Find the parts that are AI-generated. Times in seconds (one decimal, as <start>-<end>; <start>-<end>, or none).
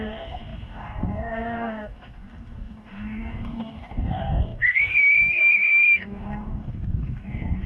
0.0-7.7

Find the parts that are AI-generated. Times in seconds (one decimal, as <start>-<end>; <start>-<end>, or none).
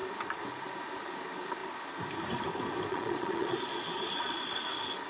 2.9-4.5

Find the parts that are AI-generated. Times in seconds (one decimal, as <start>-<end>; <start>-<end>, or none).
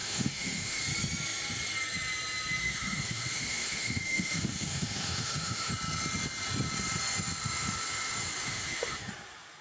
0.0-0.8; 2.6-5.7; 8.4-9.1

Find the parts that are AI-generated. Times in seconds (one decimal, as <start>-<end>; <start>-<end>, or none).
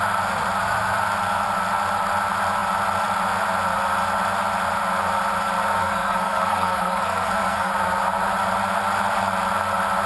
5.8-7.7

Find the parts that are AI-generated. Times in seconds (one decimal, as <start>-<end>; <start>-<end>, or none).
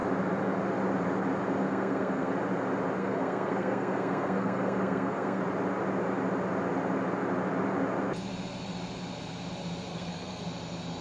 1.6-2.3; 3.0-5.4; 9.9-10.4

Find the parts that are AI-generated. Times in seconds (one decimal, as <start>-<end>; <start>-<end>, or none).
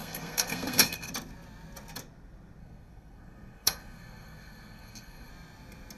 0.0-1.1; 2.6-5.3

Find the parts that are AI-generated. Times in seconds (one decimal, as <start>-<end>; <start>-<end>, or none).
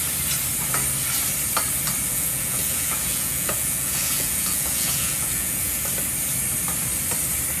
2.1-5.8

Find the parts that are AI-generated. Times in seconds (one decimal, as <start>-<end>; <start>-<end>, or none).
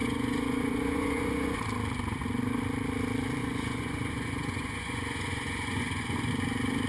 0.0-1.6; 3.4-6.3